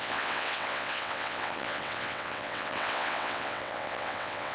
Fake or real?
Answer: fake